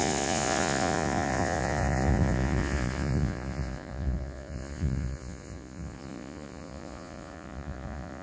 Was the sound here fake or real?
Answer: fake